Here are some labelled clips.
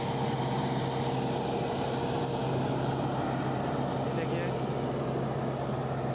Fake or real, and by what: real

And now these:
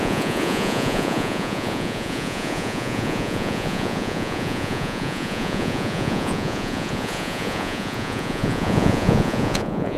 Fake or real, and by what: fake, vocoder, Vocos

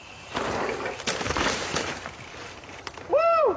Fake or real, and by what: fake, vocoder, BigVGAN v2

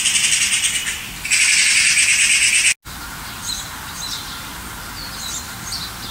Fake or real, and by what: real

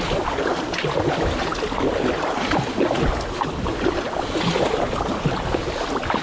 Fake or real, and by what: real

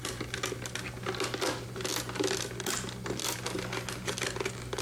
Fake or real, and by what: real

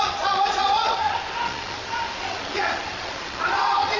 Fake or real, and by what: fake, vocoder, Vocos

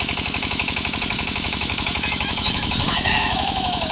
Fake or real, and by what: fake, autoencoder, DAC-VAE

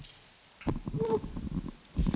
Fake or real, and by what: real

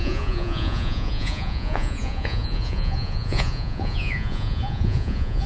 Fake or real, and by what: fake, vocoder, Vocos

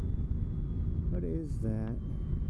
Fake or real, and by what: real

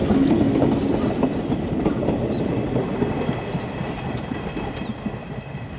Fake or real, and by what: real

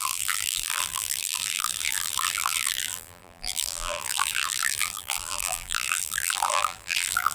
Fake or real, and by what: fake, vocoder, BigVGAN v2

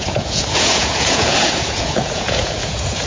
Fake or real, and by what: fake, vocoder, Vocos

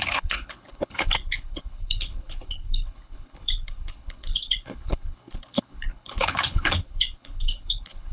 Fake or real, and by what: fake, codec, HILCodec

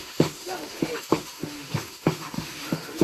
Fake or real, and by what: fake, autoencoder, DAC-VAE